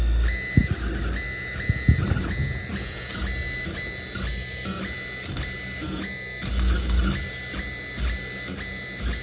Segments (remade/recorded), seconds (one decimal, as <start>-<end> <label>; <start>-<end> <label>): 0.0-9.2 recorded